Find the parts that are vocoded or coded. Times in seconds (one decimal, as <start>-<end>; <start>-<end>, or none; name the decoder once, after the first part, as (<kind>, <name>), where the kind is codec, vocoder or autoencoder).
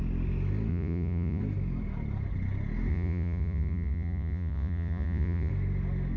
0.7-1.4 (vocoder, Vocos); 2.9-5.5